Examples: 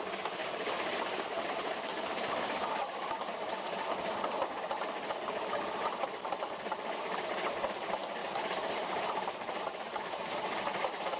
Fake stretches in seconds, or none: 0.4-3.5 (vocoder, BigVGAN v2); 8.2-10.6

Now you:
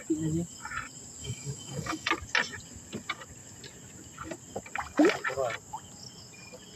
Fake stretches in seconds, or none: 1.2-2.1 (autoencoder, DAC-VAE)